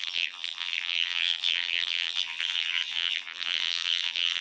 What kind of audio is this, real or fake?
fake